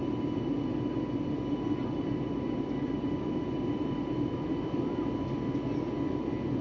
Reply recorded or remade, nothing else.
recorded